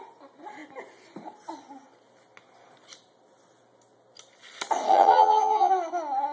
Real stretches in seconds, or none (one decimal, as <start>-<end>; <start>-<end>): 0.0-4.9; 5.7-6.3